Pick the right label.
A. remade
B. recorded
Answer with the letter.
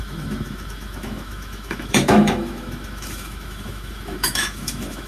A